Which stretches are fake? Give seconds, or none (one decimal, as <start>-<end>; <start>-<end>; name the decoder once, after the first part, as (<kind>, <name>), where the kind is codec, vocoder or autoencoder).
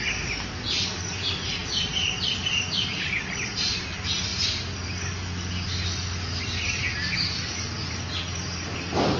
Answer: 1.6-2.5 (vocoder, BigVGAN v2)